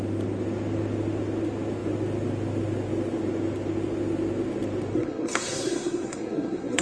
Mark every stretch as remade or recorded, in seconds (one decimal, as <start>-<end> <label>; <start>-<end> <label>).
0.0-4.9 recorded; 4.9-6.8 remade